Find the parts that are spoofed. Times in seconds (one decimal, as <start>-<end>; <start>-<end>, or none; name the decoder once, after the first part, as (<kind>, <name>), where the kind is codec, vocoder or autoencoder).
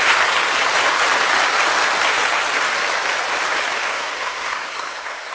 3.9-5.3 (codec, SNAC)